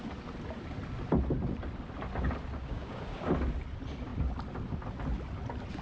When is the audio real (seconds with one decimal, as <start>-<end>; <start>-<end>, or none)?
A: 0.0-2.6; 3.3-5.8